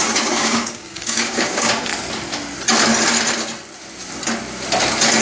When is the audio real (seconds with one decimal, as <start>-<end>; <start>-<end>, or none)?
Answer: 1.9-5.2